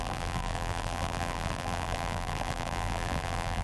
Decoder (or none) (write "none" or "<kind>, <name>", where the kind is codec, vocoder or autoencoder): vocoder, BigVGAN v2